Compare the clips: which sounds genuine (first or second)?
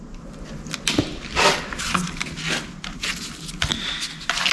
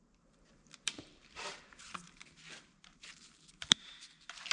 first